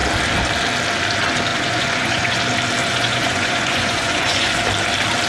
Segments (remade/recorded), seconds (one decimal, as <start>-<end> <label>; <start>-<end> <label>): 0.0-1.5 recorded; 1.5-2.4 remade; 2.4-2.8 recorded; 2.8-4.6 remade; 4.6-5.3 recorded